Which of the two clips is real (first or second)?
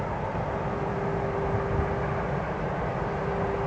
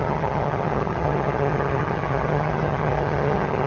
first